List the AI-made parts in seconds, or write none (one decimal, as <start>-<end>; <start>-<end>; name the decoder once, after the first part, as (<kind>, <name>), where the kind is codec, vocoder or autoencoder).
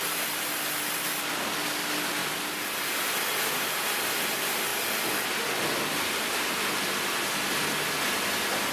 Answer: none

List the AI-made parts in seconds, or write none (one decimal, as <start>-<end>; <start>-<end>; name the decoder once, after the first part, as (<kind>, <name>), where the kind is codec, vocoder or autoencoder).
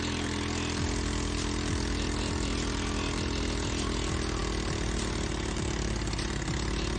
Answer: none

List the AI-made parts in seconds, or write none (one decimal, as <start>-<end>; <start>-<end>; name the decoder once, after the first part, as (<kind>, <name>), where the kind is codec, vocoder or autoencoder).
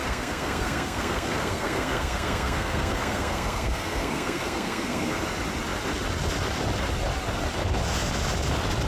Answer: 0.0-5.2 (codec, SNAC)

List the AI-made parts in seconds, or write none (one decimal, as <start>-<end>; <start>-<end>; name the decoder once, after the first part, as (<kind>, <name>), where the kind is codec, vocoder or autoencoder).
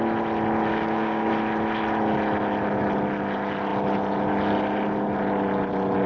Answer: 0.7-1.3 (codec, DAC)